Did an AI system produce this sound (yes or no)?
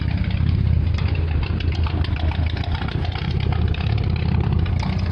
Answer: no